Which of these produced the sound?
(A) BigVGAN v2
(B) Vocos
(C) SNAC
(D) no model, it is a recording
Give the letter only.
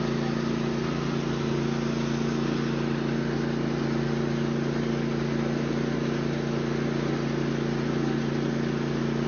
D